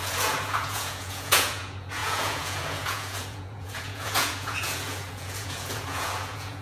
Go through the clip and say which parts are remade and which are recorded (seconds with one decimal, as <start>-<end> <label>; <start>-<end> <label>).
0.0-6.6 remade